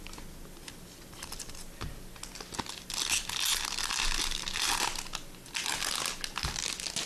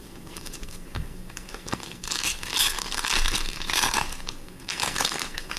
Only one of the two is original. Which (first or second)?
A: first